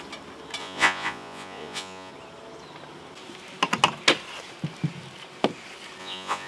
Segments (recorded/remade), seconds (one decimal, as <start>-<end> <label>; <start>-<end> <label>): 0.0-0.6 recorded; 0.6-2.1 remade; 2.1-6.0 recorded; 6.0-6.5 remade